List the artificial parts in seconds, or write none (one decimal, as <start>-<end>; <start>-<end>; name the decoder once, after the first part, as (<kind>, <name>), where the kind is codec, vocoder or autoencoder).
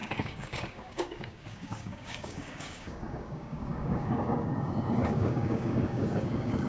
0.0-6.7 (codec, DAC)